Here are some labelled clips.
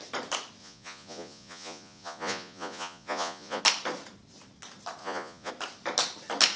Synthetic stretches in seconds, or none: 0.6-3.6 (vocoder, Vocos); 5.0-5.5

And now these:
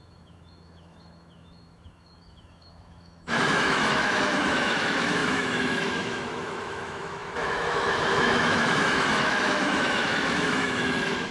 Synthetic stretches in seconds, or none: 0.0-11.3 (autoencoder, DAC-VAE)

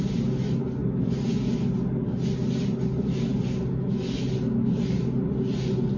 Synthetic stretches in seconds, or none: none

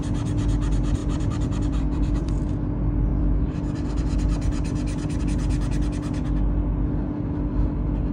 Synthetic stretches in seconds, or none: 1.0-2.4 (vocoder, BigVGAN v2); 3.1-5.2

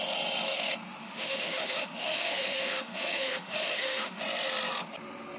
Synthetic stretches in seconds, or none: 1.0-4.2 (autoencoder, DAC-VAE)